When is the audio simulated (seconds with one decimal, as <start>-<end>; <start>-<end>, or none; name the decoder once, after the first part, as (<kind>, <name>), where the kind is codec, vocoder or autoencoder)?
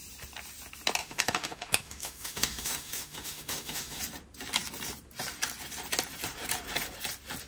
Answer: 1.0-4.0 (autoencoder, DAC-VAE)